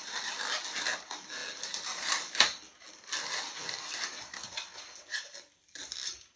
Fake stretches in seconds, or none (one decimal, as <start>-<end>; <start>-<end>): none